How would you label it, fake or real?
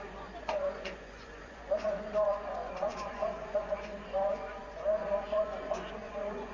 fake